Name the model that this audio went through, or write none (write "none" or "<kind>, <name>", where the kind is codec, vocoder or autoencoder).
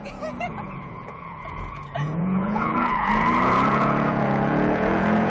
vocoder, Vocos